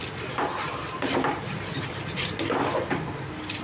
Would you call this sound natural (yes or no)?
yes